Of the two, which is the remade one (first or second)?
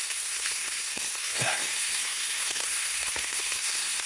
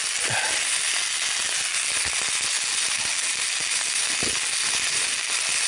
first